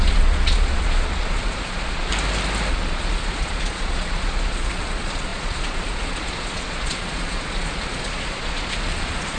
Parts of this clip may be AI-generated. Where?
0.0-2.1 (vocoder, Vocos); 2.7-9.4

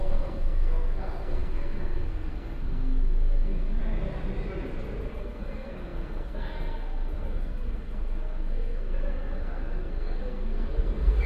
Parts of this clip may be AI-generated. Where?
0.0-3.8 (codec, SNAC); 5.1-11.3

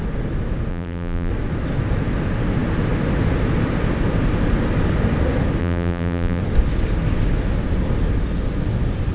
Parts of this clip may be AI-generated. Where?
0.7-1.3 (vocoder, BigVGAN v2); 5.6-6.4

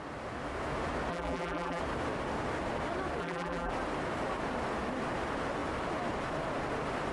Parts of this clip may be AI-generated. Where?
1.1-1.8 (vocoder, BigVGAN v2); 3.2-3.7